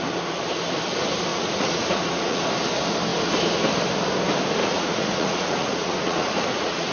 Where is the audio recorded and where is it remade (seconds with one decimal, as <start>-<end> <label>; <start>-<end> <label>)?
0.0-1.3 recorded; 1.3-2.4 remade; 2.4-4.6 recorded; 4.6-6.9 remade